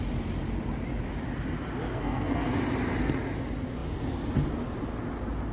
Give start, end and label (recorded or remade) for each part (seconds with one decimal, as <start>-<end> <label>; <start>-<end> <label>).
0.0-1.9 recorded; 1.9-2.5 remade; 2.5-5.5 recorded

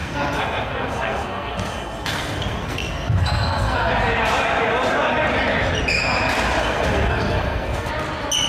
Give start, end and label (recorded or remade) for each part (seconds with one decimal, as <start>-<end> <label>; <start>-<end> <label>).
0.0-3.9 remade; 3.9-6.6 recorded; 6.6-7.9 remade; 7.9-8.5 recorded

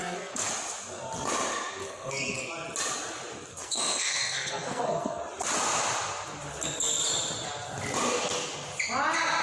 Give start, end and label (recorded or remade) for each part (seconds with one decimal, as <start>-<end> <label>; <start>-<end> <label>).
0.0-0.5 remade; 0.5-1.8 recorded; 1.8-2.5 remade; 2.5-3.5 recorded; 3.5-5.2 remade; 5.2-9.4 recorded

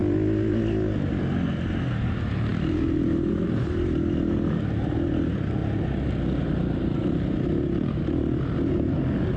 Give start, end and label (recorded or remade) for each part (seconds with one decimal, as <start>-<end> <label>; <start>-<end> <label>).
0.0-9.4 recorded

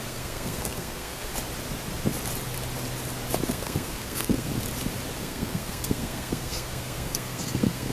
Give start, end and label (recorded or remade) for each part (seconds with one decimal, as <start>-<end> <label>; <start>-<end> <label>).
0.0-1.3 remade; 1.3-3.5 recorded; 3.5-4.5 remade; 4.5-5.2 recorded; 5.2-7.9 remade

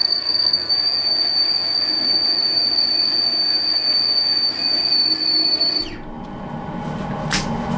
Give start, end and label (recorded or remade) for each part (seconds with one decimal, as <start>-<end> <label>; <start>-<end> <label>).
0.0-0.7 remade; 0.7-7.8 recorded